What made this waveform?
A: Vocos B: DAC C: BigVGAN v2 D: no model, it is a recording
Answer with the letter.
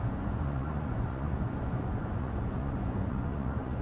A